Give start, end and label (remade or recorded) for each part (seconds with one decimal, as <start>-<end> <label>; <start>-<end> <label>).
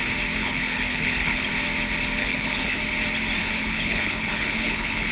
0.0-0.4 recorded; 0.4-1.5 remade; 1.5-2.2 recorded; 2.2-2.8 remade; 2.8-3.4 recorded; 3.4-5.1 remade